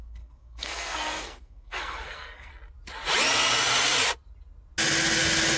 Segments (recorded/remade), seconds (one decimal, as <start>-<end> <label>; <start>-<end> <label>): 0.0-2.5 remade; 2.5-5.6 recorded